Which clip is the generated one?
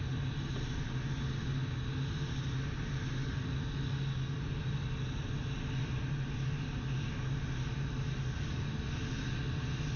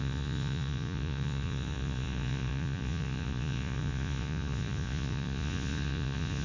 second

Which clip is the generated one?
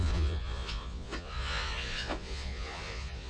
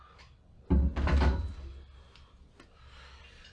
first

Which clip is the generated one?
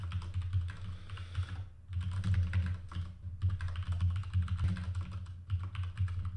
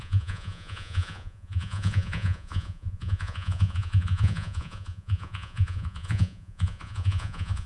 second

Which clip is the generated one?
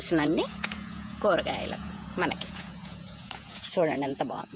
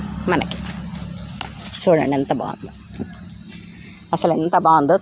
first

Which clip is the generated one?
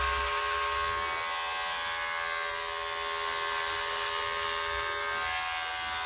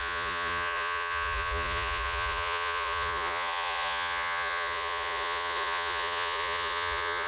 second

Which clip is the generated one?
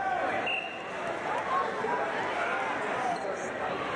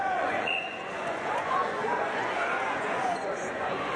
second